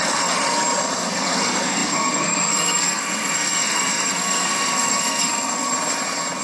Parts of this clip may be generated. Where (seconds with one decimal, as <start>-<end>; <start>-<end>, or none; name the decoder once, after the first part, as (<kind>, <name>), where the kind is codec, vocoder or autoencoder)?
0.0-5.7 (codec, SNAC)